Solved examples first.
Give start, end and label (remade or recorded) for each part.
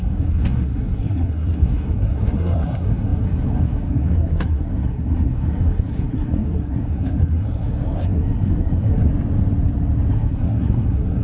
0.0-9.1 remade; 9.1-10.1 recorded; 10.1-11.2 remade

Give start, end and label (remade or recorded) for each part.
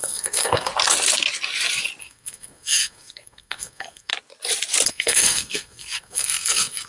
0.0-0.7 remade; 0.7-2.0 recorded; 2.0-4.1 remade; 4.1-4.9 recorded; 4.9-6.9 remade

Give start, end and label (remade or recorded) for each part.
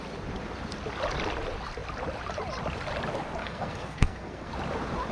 0.0-3.4 recorded; 3.4-4.5 remade; 4.5-5.1 recorded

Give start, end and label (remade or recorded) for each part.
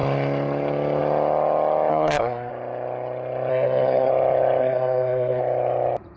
0.0-1.9 recorded; 1.9-2.5 remade; 2.5-3.5 recorded; 3.5-4.1 remade; 4.1-4.6 recorded; 4.6-5.4 remade; 5.4-6.2 recorded